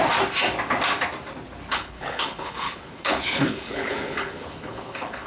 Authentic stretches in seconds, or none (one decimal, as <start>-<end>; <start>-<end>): 0.0-1.7